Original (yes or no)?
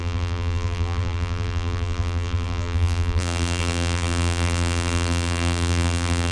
no